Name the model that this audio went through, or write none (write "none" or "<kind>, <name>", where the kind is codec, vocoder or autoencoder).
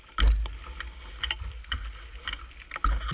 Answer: none